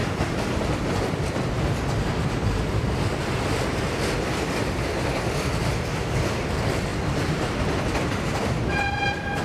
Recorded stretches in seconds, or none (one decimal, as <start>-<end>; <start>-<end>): 0.0-4.2